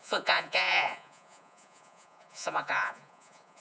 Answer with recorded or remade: remade